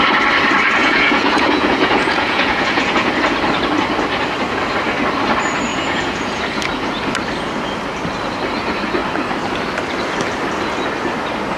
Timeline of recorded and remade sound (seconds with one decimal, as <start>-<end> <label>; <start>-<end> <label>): 0.0-0.8 recorded; 0.8-3.1 remade; 3.1-5.7 recorded; 5.7-6.4 remade; 6.4-11.6 recorded